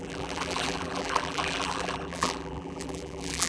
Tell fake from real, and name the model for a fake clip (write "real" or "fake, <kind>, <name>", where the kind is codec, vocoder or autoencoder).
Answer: fake, vocoder, BigVGAN v2